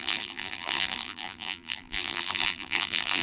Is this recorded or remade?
remade